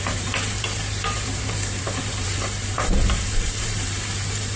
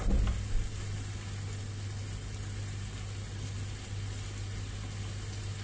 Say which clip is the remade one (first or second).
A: first